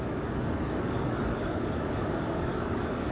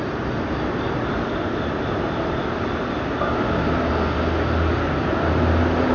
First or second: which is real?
second